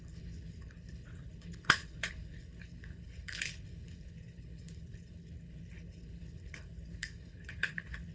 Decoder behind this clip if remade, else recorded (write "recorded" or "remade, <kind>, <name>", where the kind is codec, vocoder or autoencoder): remade, codec, HILCodec